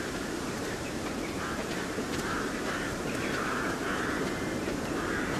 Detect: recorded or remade remade